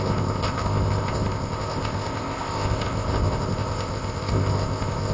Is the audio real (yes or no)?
no